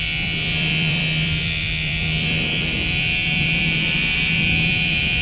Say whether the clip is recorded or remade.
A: remade